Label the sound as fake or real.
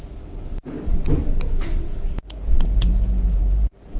fake